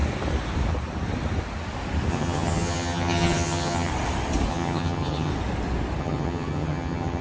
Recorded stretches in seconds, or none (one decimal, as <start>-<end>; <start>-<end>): 0.0-2.1; 3.9-4.5; 5.3-6.0